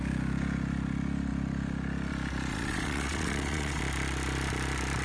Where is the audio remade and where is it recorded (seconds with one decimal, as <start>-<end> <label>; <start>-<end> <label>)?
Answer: 0.0-2.5 recorded; 2.5-3.8 remade; 3.8-5.0 recorded